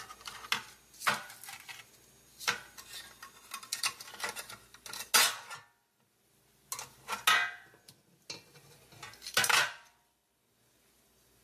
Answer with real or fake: real